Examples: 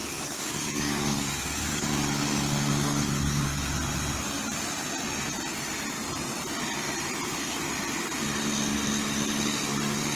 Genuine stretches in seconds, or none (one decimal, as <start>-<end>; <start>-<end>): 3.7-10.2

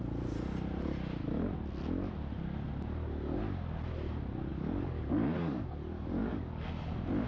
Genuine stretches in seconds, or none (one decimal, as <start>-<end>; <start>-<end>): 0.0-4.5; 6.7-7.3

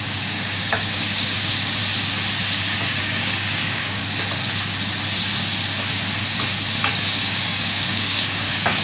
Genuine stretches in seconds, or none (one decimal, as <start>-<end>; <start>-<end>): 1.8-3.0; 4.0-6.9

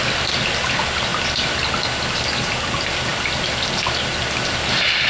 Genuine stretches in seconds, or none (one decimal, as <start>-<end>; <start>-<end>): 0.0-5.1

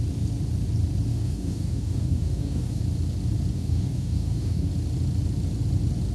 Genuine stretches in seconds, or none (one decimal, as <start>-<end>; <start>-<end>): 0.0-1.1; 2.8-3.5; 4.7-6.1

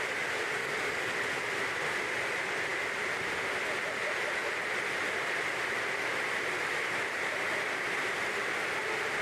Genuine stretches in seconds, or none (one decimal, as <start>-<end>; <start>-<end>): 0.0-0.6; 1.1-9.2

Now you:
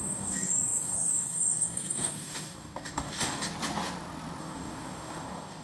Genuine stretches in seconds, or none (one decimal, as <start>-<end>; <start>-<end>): 3.5-4.4